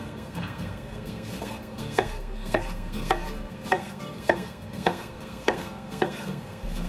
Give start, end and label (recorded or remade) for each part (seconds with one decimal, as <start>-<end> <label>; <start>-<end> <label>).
0.0-6.9 remade